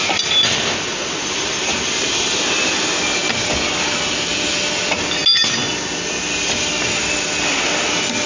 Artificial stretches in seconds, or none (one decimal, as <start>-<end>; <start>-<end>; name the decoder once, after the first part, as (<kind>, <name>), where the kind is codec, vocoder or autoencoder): none